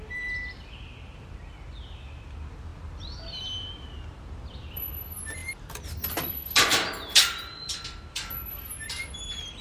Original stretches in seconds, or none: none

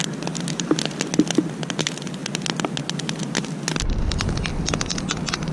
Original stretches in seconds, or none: 0.0-5.5

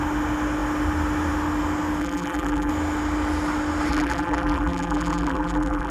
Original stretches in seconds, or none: 0.0-2.0; 2.7-3.9

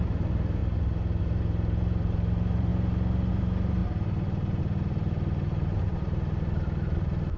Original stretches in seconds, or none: 0.6-1.2; 2.7-3.3

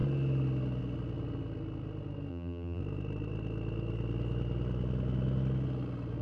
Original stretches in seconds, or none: 0.0-2.3; 2.8-6.2

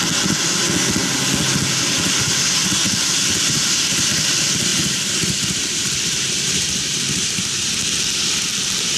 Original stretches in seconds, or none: 0.0-2.6; 4.1-4.7; 7.7-9.0

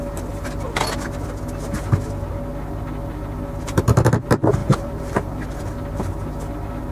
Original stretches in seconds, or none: 0.0-4.6; 5.4-6.9